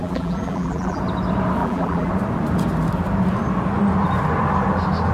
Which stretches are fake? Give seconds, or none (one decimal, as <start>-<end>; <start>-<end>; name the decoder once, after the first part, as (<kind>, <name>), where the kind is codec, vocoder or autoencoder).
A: 0.0-1.0 (vocoder, BigVGAN v2); 1.6-2.1